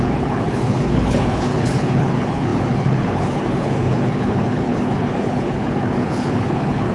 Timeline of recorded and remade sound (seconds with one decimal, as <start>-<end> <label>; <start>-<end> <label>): 0.0-6.9 remade